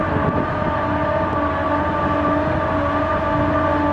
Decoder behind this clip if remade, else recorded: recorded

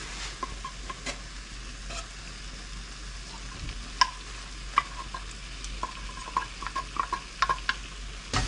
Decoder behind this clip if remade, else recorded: recorded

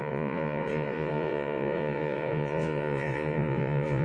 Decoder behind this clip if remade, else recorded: remade, vocoder, Vocos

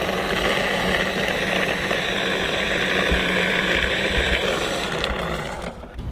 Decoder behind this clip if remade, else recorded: recorded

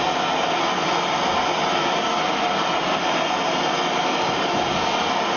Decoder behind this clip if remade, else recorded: recorded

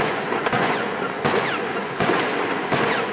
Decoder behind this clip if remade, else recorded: remade, vocoder, Vocos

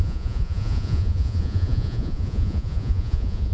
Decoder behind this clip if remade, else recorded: remade, vocoder, Vocos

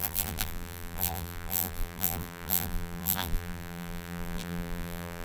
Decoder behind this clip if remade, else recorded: remade, vocoder, BigVGAN v2